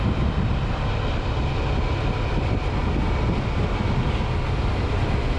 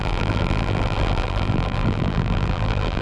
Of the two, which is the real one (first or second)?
first